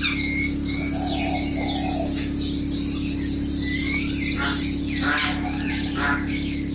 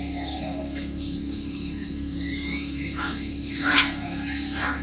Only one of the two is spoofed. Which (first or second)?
second